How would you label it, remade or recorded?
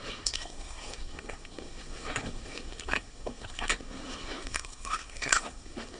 remade